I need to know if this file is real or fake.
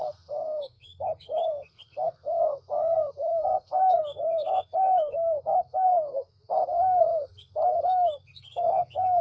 fake